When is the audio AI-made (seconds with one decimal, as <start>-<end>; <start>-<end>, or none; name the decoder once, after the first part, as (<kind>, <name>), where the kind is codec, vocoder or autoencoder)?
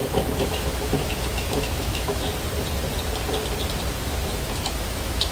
0.0-2.3 (autoencoder, DAC-VAE); 3.9-5.3